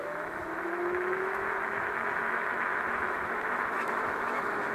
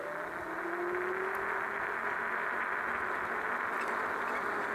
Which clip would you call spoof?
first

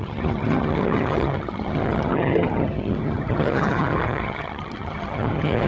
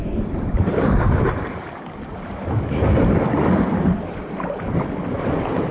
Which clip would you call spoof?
first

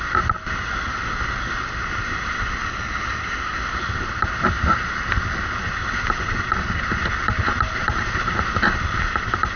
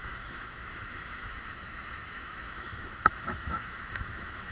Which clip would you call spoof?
second